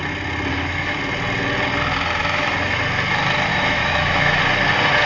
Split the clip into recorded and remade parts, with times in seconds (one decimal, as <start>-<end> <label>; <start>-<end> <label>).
0.0-0.5 recorded; 0.5-1.0 remade; 1.0-2.2 recorded; 2.2-2.8 remade; 2.8-3.5 recorded; 3.5-4.4 remade; 4.4-5.1 recorded

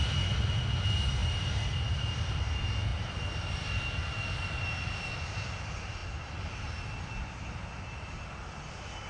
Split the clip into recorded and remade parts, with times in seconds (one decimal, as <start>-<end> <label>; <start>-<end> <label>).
0.0-9.1 recorded

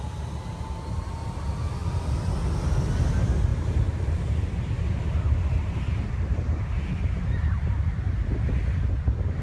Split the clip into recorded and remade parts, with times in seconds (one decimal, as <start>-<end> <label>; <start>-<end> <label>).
0.0-3.5 recorded; 3.5-6.6 remade; 6.6-9.4 recorded

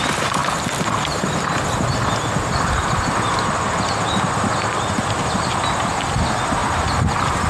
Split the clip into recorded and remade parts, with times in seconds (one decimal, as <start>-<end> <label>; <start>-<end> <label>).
0.0-7.5 recorded